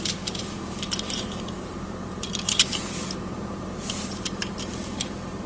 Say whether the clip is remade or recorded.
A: remade